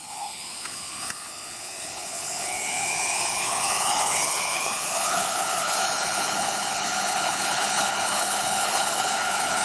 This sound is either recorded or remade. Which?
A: remade